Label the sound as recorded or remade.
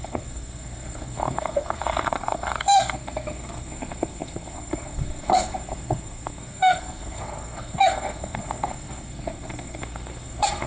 remade